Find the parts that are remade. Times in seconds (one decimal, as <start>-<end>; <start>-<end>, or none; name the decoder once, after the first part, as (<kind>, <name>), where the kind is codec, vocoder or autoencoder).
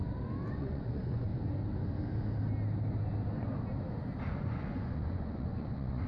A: 0.5-1.3 (vocoder, Vocos); 4.3-6.1